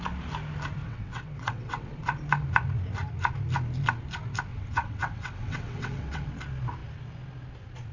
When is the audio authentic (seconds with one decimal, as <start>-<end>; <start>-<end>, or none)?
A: 0.0-0.8; 1.9-4.5; 6.3-7.9